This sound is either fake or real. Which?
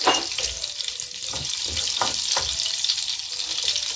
real